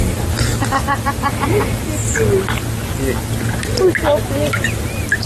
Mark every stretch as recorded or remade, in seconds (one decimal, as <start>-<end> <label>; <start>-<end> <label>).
0.0-5.3 recorded